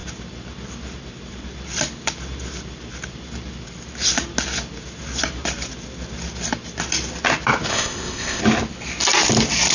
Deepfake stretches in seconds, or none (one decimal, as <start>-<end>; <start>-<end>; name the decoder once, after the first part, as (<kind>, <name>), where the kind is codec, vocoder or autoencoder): 7.7-8.4 (codec, ZipCodec)